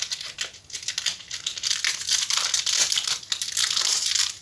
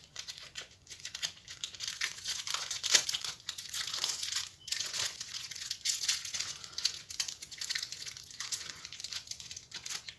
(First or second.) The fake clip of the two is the second